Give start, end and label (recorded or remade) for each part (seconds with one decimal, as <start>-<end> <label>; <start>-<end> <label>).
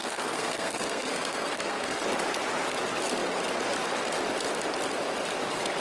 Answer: 0.0-2.0 remade; 2.0-5.8 recorded